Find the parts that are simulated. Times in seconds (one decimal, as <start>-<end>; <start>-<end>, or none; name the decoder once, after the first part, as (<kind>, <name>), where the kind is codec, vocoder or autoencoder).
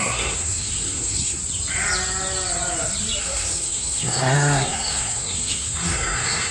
0.0-1.4 (codec, SNAC); 3.2-6.5